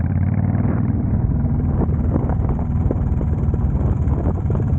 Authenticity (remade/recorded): remade